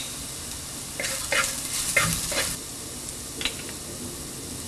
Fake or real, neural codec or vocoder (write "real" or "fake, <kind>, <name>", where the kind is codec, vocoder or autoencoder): real